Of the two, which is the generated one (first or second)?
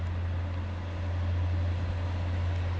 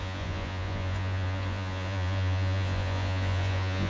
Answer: second